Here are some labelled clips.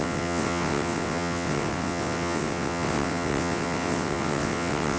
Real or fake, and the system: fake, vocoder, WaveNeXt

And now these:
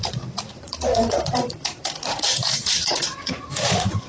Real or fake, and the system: fake, vocoder, Vocos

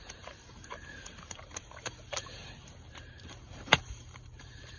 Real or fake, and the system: fake, vocoder, BigVGAN v2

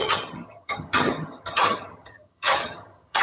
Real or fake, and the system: fake, vocoder, HiFi-GAN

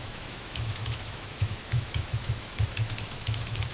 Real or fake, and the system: fake, autoencoder, DAC-VAE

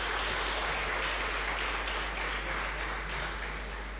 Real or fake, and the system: real